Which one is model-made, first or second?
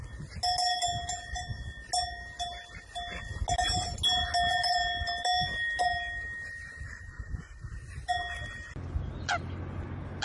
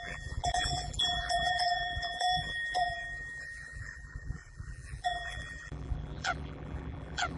second